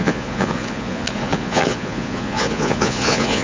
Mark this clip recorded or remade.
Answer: remade